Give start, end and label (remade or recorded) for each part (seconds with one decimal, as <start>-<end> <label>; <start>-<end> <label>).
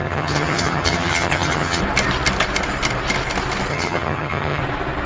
0.0-1.8 remade; 1.8-3.7 recorded; 3.7-4.6 remade; 4.6-5.1 recorded